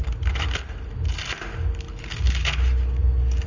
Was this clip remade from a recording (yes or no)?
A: no